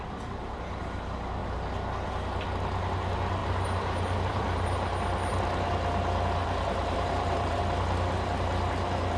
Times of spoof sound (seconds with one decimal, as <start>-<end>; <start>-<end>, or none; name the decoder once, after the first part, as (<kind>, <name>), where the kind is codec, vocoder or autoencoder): 3.4-4.7 (vocoder, BigVGAN v2); 6.4-7.6